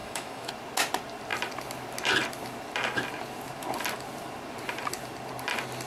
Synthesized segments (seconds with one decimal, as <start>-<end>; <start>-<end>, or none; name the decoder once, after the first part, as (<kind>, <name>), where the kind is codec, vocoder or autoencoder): 0.0-0.5 (autoencoder, DAC-VAE)

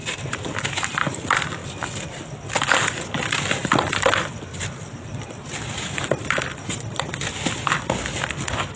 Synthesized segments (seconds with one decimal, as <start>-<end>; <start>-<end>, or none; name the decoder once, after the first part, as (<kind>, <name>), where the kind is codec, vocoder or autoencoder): none

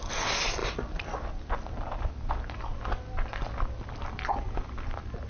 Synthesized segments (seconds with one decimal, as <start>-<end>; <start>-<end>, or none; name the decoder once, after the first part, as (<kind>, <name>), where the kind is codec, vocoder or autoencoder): none

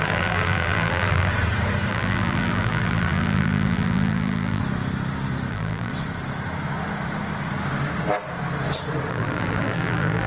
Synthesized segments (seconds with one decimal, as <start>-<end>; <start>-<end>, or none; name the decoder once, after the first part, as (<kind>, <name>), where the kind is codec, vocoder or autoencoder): 0.0-1.3 (vocoder, BigVGAN v2); 1.9-4.6; 5.5-5.9; 9.1-10.3

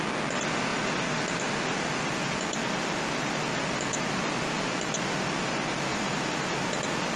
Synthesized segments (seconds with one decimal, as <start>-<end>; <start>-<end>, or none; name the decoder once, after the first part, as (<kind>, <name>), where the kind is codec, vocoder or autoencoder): 5.9-6.5 (vocoder, BigVGAN v2)

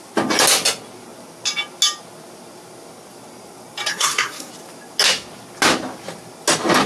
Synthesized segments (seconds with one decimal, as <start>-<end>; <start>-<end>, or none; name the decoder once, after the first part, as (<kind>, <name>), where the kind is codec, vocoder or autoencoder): 3.9-4.5 (codec, SNAC)